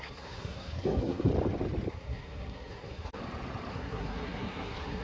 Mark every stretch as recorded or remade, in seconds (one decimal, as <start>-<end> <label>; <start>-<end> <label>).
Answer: 0.0-1.3 remade; 1.3-1.9 recorded; 1.9-3.2 remade; 3.2-3.7 recorded; 3.7-5.0 remade